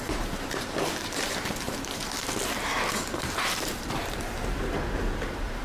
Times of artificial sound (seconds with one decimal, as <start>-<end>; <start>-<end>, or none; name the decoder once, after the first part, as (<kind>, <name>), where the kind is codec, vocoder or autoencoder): 0.0-2.0 (vocoder, BigVGAN v2); 2.9-5.6